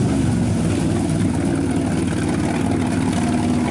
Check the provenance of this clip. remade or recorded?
remade